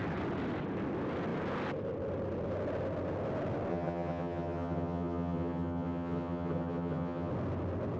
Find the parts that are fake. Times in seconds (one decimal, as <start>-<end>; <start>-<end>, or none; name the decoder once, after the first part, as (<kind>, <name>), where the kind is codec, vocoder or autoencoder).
3.7-7.3 (vocoder, HiFi-GAN)